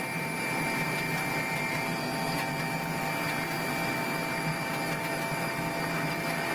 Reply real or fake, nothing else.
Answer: real